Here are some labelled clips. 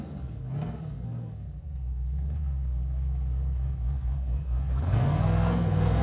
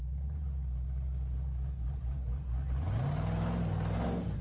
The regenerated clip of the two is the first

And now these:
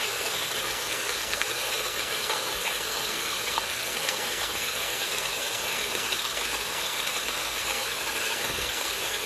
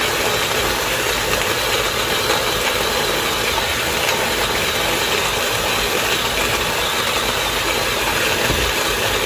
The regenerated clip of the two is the first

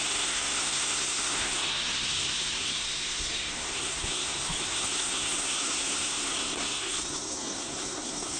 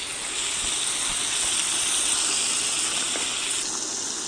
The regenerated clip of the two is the first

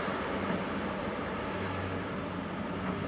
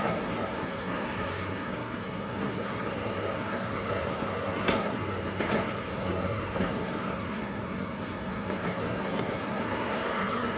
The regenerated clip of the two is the second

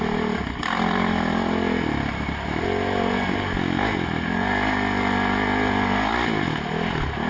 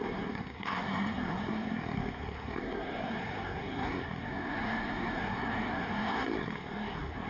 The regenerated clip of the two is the second